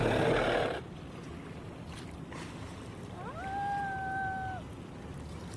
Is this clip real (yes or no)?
yes